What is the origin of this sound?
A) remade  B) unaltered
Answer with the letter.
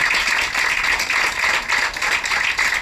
B